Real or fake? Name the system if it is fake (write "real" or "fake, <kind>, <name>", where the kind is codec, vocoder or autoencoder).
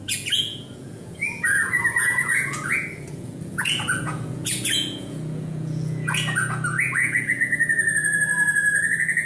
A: fake, vocoder, Vocos